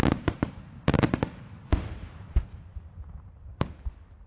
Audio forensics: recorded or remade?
remade